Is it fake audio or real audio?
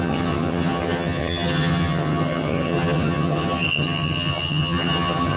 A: fake